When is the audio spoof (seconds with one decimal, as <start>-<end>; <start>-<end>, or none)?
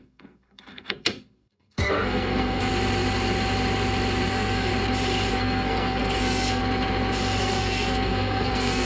0.0-2.7; 4.3-4.7; 5.3-6.6; 7.4-8.9